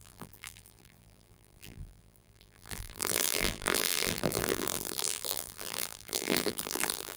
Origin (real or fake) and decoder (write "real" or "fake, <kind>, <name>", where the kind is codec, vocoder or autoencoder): fake, vocoder, BigVGAN v2